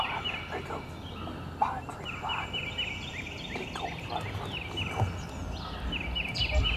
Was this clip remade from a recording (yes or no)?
no